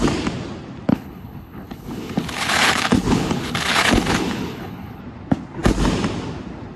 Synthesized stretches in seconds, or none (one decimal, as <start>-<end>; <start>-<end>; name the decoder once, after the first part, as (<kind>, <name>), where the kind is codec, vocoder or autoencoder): 0.9-5.0 (codec, HILCodec)